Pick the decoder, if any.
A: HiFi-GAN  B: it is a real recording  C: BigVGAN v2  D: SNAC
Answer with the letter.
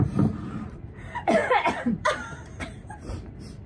C